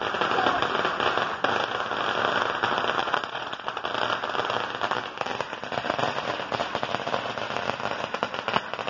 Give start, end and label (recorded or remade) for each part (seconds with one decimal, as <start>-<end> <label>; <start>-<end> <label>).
0.0-3.0 recorded; 3.0-3.8 remade; 3.8-8.9 recorded